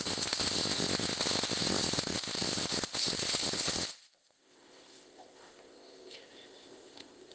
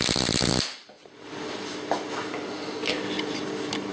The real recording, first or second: second